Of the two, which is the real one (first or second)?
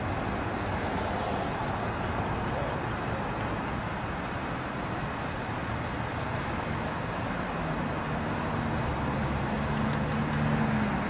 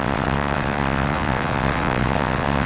first